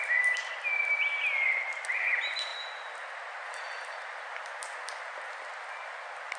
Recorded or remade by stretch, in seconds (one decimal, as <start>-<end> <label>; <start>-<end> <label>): 0.0-6.4 recorded